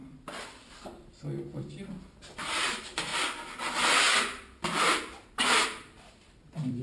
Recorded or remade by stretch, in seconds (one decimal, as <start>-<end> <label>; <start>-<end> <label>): 0.0-3.1 remade; 3.1-5.4 recorded; 5.4-6.8 remade